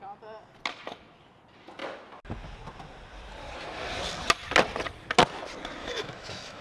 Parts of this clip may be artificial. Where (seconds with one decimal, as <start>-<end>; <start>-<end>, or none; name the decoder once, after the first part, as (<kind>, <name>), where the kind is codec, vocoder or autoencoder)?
5.8-6.6 (autoencoder, DAC-VAE)